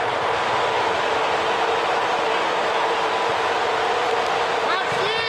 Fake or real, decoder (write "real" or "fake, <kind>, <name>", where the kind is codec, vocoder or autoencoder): real